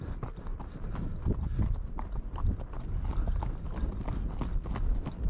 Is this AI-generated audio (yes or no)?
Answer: no